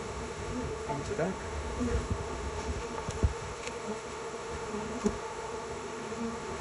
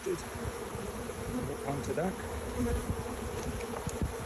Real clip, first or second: second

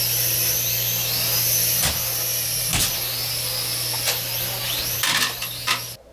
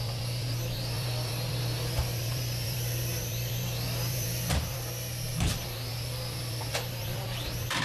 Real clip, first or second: first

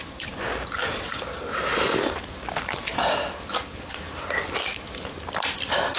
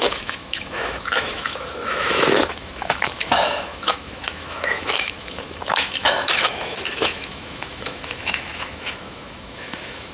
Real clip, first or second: first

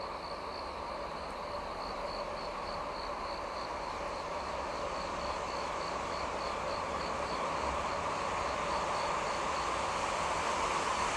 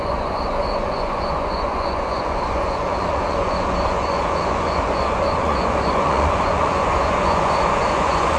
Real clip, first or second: first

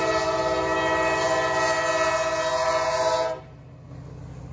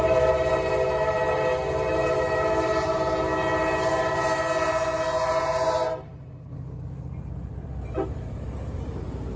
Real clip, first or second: first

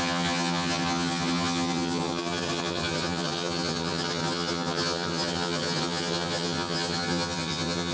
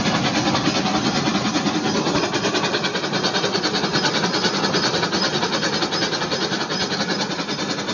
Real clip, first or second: second